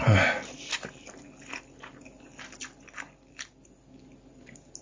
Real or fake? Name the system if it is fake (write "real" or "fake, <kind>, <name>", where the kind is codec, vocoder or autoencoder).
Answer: real